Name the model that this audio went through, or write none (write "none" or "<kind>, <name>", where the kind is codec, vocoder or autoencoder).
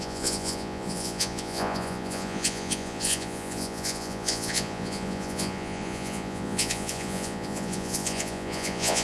vocoder, Vocos